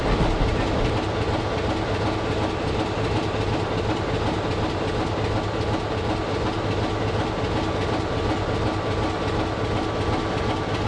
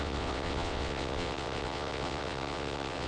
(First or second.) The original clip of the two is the first